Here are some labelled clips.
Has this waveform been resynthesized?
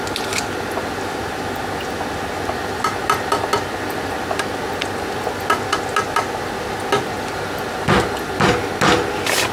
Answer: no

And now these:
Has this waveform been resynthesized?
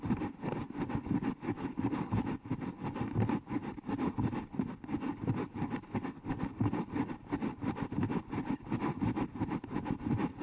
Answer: no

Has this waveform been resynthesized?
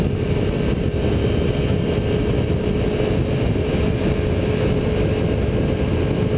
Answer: no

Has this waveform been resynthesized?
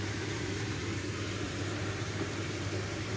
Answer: yes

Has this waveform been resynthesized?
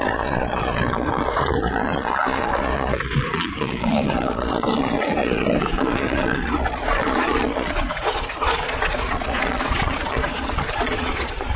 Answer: yes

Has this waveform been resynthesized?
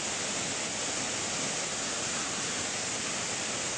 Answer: no